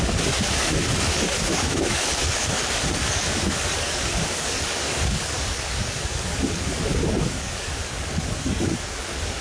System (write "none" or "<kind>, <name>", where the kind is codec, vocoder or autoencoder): codec, DAC